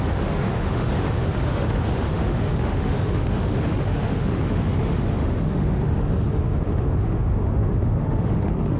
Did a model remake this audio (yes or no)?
yes